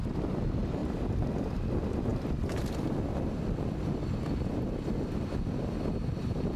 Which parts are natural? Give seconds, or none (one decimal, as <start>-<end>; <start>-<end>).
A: 0.0-6.6